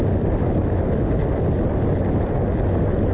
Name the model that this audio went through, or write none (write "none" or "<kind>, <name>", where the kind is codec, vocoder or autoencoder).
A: none